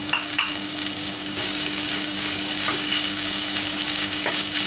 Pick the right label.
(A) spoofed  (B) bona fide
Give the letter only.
A